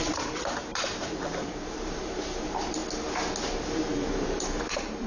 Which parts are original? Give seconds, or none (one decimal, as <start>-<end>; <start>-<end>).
2.8-3.7